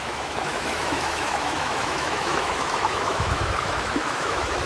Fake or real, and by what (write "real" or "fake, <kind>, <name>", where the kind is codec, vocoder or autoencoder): fake, autoencoder, DAC-VAE